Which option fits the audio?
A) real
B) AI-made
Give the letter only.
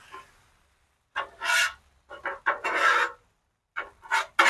A